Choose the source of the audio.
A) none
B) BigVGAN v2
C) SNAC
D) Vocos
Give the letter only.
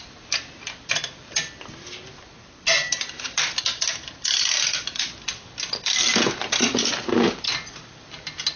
A